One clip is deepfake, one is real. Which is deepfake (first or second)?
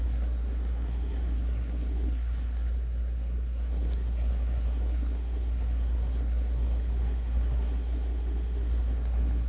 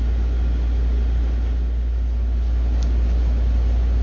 first